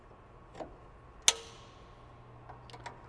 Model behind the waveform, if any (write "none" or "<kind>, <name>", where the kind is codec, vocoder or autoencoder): none